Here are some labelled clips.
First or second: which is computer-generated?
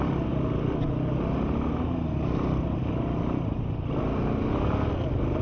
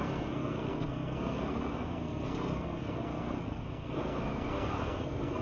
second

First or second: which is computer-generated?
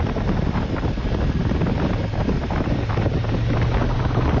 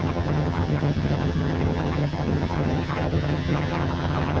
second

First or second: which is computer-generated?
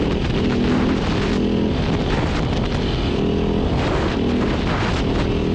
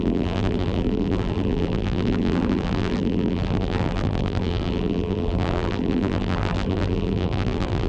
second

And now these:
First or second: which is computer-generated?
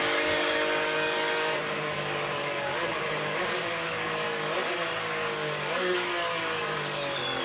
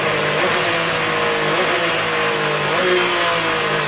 first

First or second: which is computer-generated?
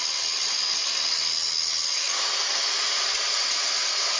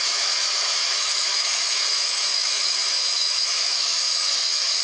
second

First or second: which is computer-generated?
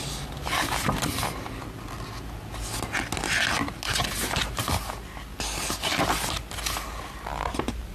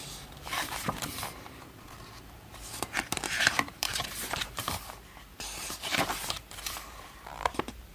second